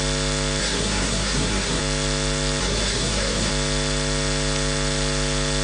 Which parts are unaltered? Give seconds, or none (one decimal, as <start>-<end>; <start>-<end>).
0.0-0.6; 1.8-2.6; 3.5-5.6